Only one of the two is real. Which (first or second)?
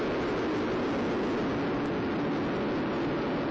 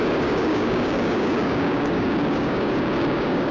first